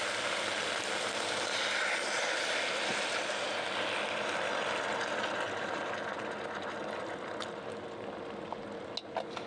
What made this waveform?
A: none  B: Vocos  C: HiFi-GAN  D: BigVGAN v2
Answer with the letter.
A